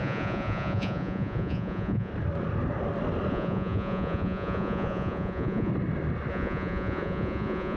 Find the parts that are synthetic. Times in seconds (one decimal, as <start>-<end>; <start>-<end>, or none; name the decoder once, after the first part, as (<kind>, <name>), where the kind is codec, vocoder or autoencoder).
0.0-2.1 (vocoder, Vocos); 3.3-5.7; 6.3-7.8